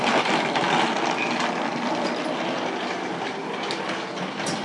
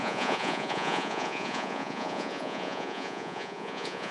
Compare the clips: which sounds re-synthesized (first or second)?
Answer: second